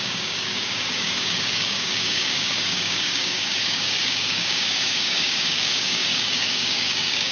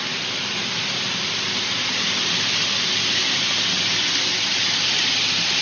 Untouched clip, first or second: second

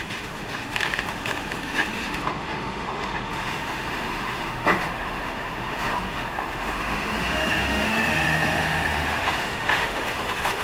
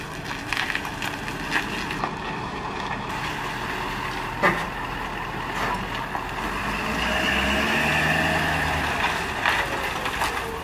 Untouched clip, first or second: second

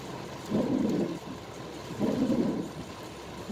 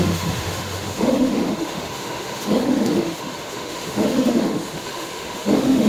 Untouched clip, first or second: first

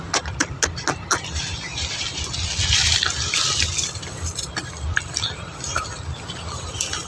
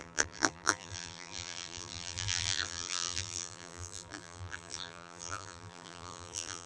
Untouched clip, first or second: first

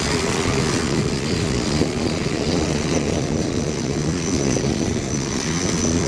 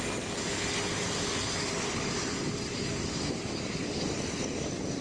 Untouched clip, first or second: second